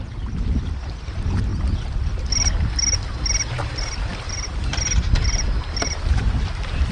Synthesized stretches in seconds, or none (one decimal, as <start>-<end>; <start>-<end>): none

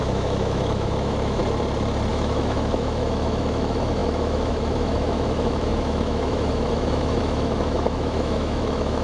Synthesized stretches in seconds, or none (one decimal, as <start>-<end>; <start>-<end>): 0.0-1.4; 2.1-9.0

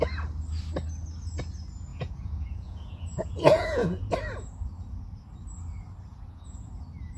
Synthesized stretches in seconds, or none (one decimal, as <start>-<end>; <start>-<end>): 1.9-4.1; 6.1-6.7

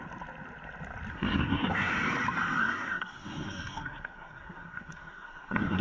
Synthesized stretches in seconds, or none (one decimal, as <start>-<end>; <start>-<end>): 1.1-1.9; 2.6-5.8

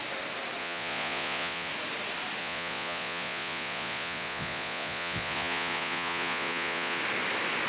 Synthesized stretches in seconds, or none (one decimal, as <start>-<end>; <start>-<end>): 0.6-1.7; 2.4-7.0

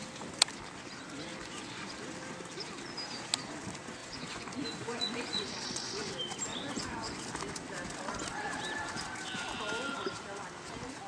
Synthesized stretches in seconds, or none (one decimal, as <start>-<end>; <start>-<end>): 1.3-1.9; 4.0-6.1; 6.5-7.2

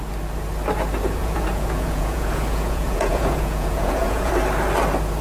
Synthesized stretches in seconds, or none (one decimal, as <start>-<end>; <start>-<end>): 1.2-4.3

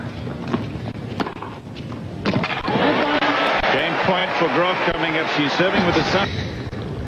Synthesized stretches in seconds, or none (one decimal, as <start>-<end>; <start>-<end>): none